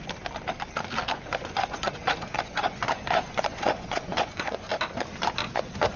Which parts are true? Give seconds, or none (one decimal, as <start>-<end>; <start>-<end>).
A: 0.0-1.1; 4.7-5.4